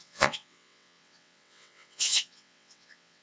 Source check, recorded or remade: remade